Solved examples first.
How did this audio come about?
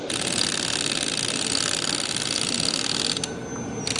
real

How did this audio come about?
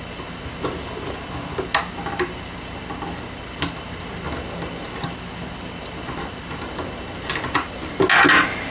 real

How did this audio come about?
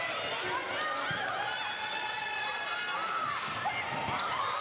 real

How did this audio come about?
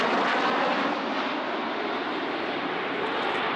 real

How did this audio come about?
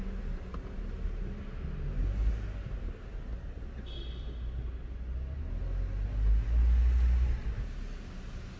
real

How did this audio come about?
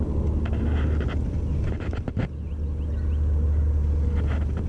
real